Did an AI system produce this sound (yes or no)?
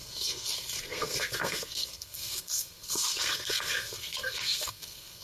yes